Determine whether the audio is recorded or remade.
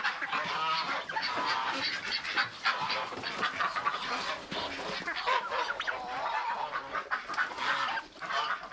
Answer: recorded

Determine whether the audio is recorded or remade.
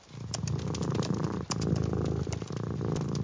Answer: recorded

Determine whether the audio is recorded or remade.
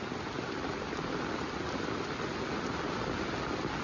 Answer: recorded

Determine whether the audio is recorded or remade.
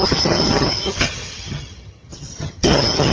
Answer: remade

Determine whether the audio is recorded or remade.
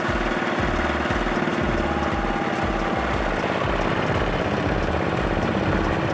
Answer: recorded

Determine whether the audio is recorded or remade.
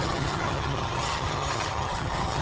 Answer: remade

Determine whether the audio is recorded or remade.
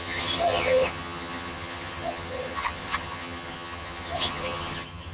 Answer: remade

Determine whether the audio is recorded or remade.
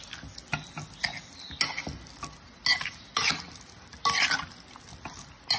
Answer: recorded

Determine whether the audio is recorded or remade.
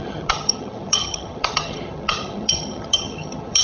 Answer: remade